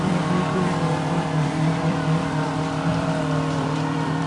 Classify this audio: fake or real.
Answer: fake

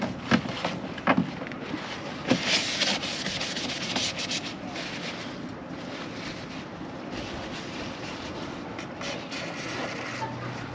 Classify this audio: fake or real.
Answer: real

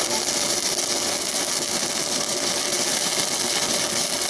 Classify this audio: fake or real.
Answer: real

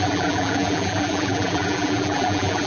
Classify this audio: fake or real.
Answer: fake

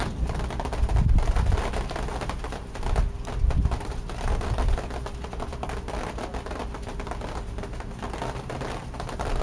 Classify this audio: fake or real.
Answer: real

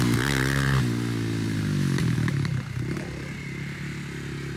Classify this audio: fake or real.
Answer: real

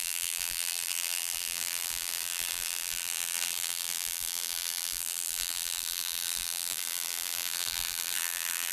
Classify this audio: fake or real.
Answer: fake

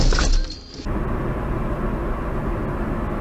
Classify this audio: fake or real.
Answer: real